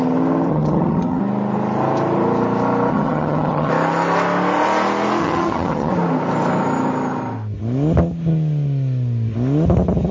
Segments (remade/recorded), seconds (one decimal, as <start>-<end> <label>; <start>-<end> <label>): 0.0-0.5 recorded; 0.5-1.2 remade; 1.2-2.9 recorded; 2.9-3.7 remade; 3.7-5.2 recorded; 5.2-5.9 remade; 5.9-10.1 recorded